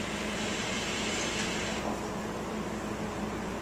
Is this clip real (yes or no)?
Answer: yes